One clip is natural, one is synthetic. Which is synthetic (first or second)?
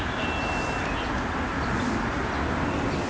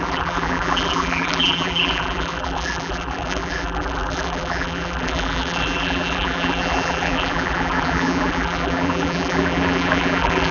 second